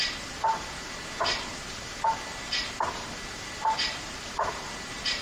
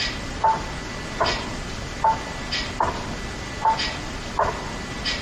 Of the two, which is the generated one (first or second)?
first